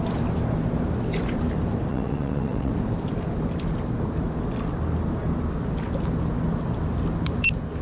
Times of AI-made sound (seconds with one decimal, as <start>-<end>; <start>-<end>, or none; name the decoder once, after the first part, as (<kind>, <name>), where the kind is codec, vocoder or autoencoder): 1.9-2.7 (vocoder, WaveNeXt)